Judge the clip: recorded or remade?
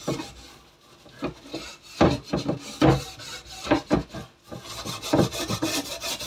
recorded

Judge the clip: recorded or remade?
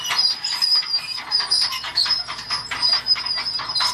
recorded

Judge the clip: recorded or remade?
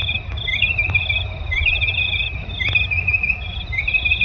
remade